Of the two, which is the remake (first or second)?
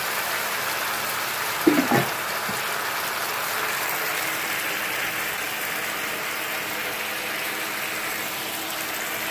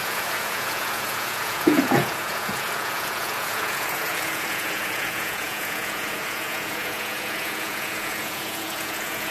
second